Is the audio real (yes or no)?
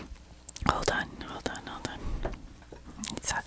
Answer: no